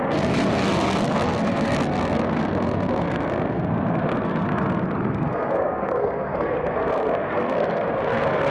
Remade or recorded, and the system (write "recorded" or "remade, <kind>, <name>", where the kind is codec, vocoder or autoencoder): remade, codec, SNAC